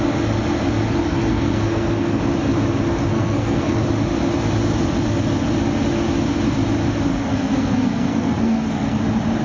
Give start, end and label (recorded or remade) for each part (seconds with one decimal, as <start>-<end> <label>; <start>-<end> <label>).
0.0-1.3 recorded; 1.3-2.2 remade; 2.2-3.1 recorded; 3.1-3.8 remade; 3.8-7.1 recorded; 7.1-9.0 remade; 9.0-9.4 recorded